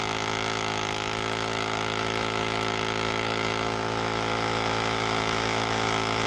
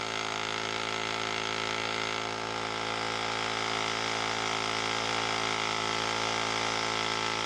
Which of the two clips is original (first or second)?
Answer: second